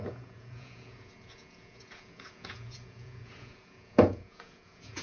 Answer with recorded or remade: remade